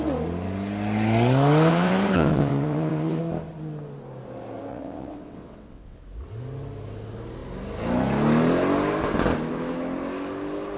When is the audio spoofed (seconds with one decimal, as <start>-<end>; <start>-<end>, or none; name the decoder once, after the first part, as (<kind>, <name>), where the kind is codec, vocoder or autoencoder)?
1.7-3.2 (vocoder, WaveNeXt); 4.7-6.0